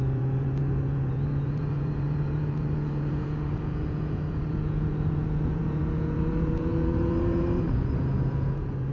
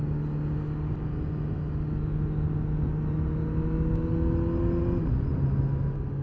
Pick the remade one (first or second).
first